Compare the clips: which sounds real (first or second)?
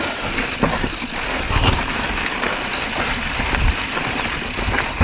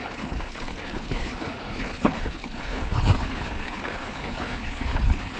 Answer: first